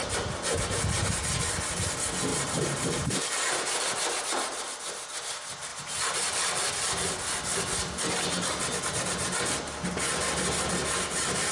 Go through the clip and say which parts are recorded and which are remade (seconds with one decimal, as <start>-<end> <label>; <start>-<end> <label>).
0.0-2.3 recorded; 2.3-3.5 remade; 3.5-5.7 recorded; 5.7-6.6 remade; 6.6-11.5 recorded